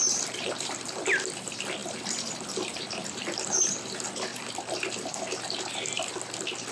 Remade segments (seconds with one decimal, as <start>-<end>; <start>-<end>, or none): 0.0-1.0